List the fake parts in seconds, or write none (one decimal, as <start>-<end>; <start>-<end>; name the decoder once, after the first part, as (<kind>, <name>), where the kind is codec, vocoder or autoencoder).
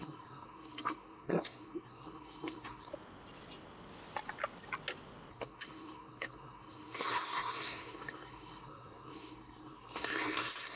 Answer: 0.0-2.9 (codec, SNAC); 5.3-10.8